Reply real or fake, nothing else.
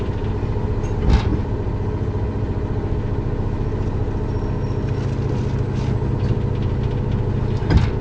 real